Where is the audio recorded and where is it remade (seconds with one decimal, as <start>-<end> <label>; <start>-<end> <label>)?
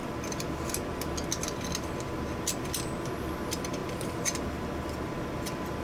0.0-5.8 recorded